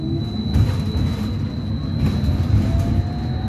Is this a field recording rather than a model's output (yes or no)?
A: yes